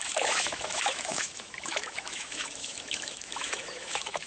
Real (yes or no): no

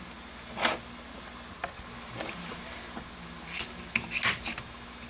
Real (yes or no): yes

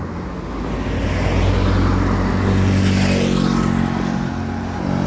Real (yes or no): yes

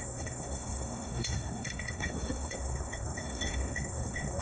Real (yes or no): no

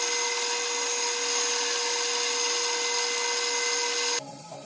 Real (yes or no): yes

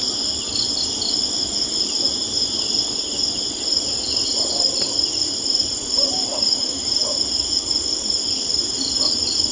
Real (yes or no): yes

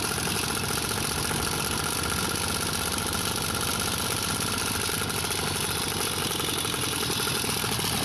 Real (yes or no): yes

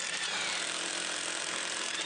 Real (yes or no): no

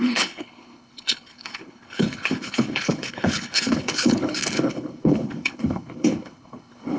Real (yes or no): no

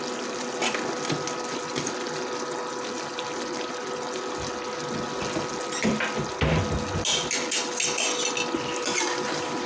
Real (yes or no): yes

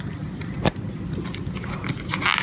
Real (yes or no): yes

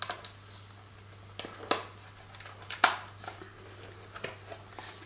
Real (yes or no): yes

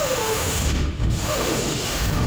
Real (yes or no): no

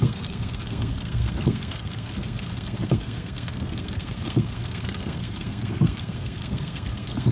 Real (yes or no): no